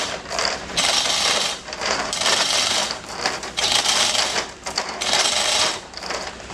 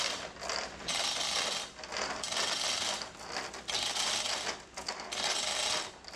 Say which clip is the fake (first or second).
first